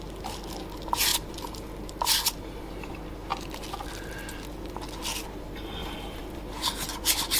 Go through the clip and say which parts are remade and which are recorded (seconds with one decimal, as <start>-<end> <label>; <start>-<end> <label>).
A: 0.0-5.8 recorded; 5.8-6.5 remade; 6.5-7.4 recorded